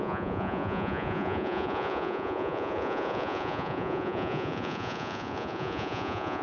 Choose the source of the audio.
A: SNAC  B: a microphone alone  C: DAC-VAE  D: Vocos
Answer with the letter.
D